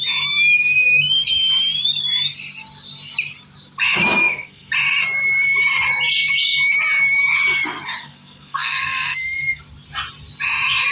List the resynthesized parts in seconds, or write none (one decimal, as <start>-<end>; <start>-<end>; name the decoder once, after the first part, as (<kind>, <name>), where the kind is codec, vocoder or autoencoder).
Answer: 4.2-4.7 (codec, SNAC); 8.0-9.6